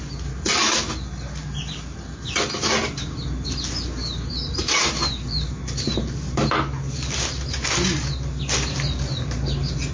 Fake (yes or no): no